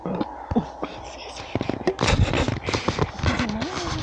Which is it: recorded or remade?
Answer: recorded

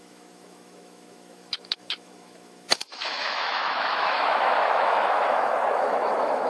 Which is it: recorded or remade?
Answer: remade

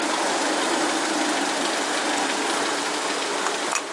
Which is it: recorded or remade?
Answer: recorded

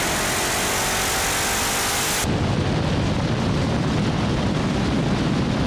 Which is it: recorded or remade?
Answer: recorded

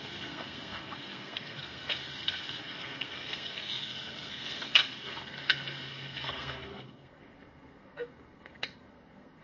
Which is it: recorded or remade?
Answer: remade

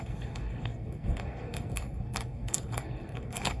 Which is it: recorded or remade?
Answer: remade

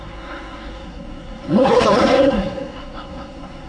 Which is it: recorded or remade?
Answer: remade